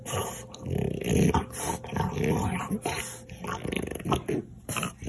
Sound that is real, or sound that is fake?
real